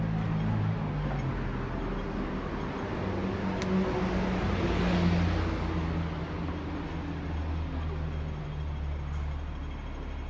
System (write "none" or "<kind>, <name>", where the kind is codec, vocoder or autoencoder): none